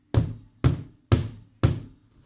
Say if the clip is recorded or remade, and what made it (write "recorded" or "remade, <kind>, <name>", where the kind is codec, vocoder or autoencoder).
recorded